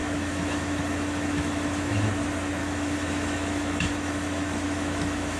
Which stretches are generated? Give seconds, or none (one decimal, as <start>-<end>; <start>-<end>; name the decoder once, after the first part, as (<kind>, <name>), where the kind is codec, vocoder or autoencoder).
0.0-2.1 (autoencoder, DAC-VAE); 2.6-5.4